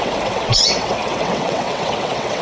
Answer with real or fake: fake